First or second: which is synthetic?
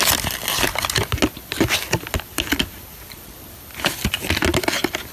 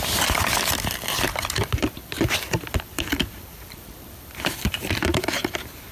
second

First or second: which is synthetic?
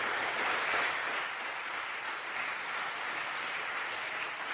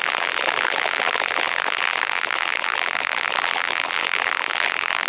second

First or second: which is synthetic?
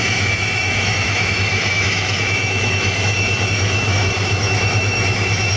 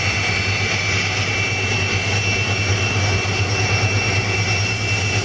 first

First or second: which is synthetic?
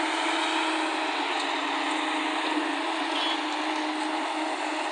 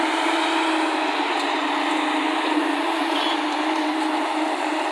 second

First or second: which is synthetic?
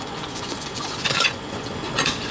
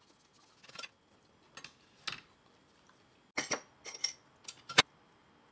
first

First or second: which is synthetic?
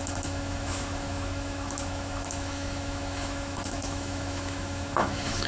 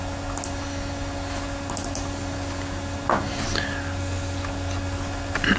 first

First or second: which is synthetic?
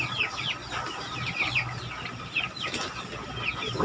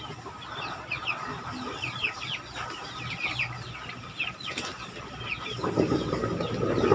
second